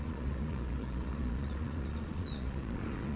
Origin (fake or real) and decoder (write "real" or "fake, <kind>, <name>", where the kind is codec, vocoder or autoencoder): fake, vocoder, Vocos